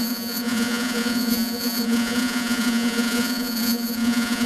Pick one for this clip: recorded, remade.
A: remade